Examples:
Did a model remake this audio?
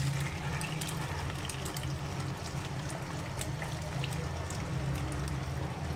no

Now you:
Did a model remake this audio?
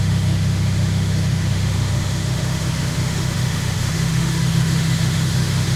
yes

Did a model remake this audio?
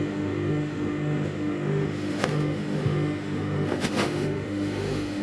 yes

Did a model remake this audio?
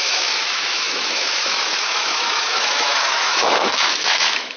yes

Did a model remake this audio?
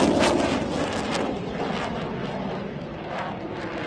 no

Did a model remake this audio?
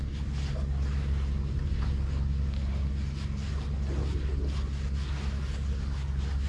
no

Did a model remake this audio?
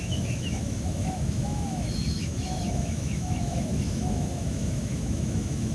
yes